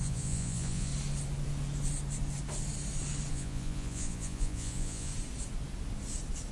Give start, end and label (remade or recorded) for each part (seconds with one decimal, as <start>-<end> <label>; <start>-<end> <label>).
0.0-0.9 remade; 0.9-3.3 recorded; 3.3-5.1 remade; 5.1-6.5 recorded